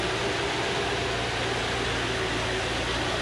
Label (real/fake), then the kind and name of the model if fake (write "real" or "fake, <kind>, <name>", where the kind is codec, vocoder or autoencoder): real